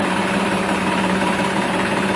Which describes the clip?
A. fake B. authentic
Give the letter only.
A